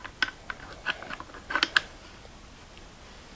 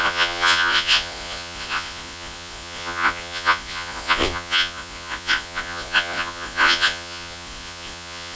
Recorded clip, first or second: first